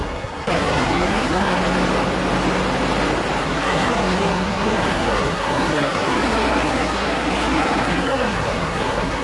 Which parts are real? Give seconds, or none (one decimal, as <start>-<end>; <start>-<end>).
1.6-3.4